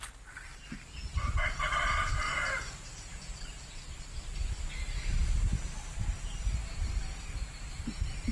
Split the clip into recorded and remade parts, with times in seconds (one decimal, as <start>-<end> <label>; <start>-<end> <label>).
0.0-8.3 recorded